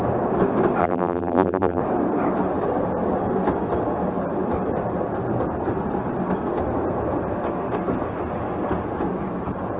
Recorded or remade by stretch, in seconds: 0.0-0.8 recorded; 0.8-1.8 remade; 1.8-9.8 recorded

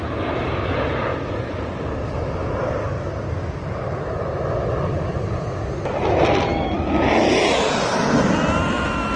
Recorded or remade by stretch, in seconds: 0.0-1.1 recorded; 1.1-1.9 remade; 1.9-9.2 recorded

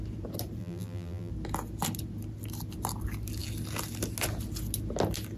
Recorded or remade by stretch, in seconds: 0.0-0.6 recorded; 0.6-1.3 remade; 1.3-5.4 recorded

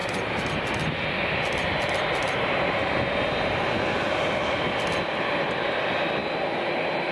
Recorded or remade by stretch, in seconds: 0.0-0.5 remade; 0.5-7.1 recorded

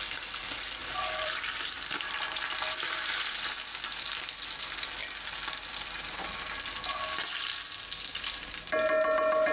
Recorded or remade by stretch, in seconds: 0.0-0.8 recorded; 0.8-3.6 remade; 3.6-9.5 recorded